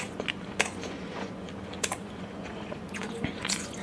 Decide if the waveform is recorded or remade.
remade